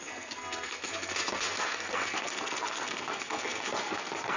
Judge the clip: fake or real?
fake